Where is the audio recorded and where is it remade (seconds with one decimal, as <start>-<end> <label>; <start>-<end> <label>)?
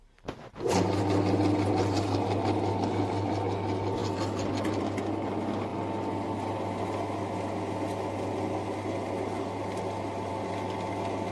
0.0-11.3 recorded